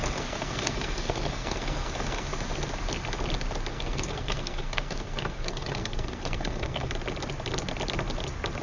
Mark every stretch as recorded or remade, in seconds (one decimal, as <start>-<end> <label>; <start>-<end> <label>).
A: 0.0-2.3 remade; 2.3-3.7 recorded; 3.7-6.9 remade; 6.9-8.6 recorded